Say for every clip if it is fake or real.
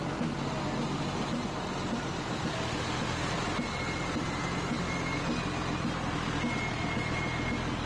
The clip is real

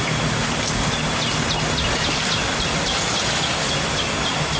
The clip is real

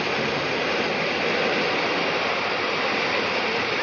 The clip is real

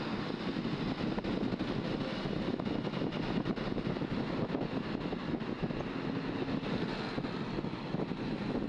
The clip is real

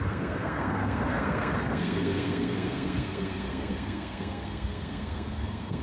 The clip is fake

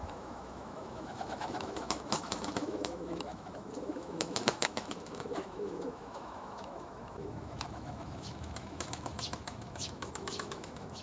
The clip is fake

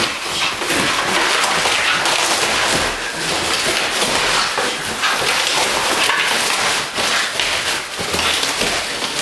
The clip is real